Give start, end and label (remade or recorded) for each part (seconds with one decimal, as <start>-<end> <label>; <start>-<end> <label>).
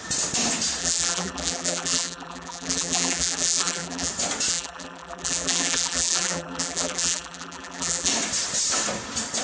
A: 0.0-0.8 recorded; 0.8-4.1 remade; 4.1-4.5 recorded; 4.5-8.1 remade; 8.1-9.4 recorded